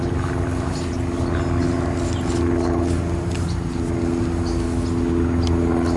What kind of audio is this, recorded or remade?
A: recorded